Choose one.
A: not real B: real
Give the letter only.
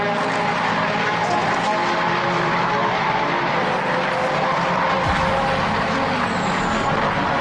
B